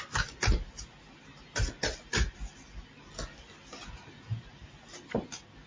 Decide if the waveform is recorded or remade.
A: recorded